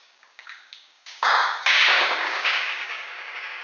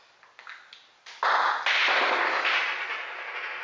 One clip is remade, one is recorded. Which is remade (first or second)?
first